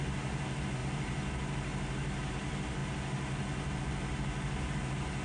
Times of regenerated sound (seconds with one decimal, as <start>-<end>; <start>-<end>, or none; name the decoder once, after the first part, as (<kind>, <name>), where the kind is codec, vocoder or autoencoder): none

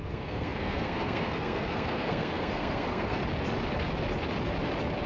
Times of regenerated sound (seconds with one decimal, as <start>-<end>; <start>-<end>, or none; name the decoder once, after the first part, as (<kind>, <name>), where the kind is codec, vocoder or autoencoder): 0.0-3.2 (codec, SNAC)